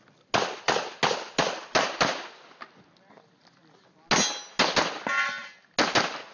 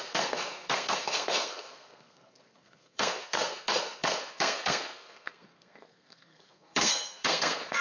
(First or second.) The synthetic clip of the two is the second